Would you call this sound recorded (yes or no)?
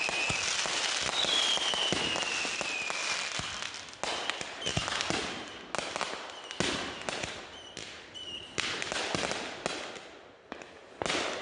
yes